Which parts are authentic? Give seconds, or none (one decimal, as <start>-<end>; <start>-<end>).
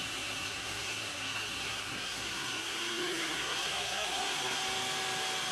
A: 4.6-5.5